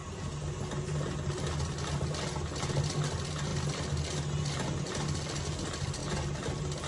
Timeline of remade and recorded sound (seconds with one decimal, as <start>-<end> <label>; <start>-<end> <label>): 0.0-6.9 recorded